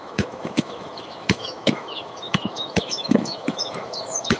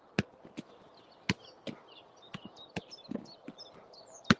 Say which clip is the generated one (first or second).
first